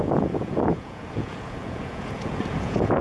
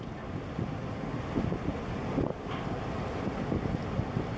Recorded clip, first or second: second